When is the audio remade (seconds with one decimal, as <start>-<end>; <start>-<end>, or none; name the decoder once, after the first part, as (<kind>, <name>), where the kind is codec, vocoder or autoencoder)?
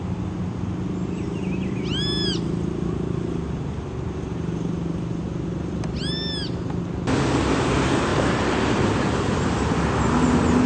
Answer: 8.1-8.9 (vocoder, BigVGAN v2)